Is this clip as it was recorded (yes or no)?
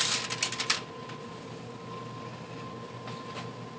yes